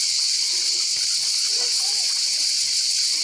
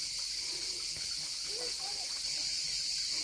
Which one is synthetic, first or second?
first